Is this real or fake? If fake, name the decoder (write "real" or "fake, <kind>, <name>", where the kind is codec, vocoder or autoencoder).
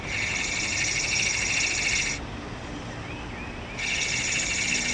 real